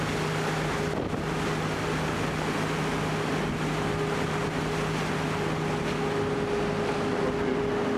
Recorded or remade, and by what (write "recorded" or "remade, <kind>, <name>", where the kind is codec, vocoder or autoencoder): recorded